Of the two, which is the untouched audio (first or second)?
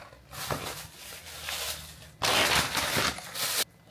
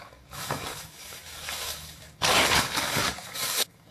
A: first